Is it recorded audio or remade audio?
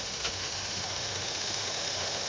remade